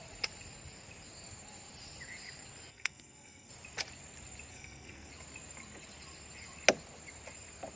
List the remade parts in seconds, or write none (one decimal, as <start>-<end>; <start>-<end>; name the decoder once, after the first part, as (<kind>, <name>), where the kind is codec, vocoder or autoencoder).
2.7-3.5 (codec, SNAC); 4.5-5.1